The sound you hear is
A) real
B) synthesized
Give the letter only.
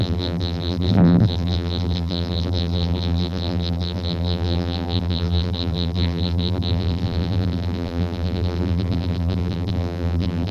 B